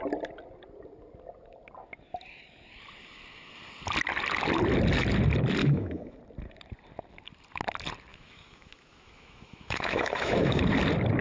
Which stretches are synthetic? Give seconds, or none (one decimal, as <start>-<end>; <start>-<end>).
5.6-6.2; 8.1-10.6